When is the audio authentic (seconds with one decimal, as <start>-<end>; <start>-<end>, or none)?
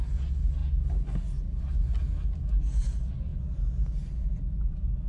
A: 0.0-5.1